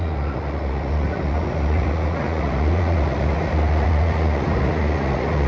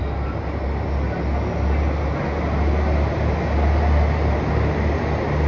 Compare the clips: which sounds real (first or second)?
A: second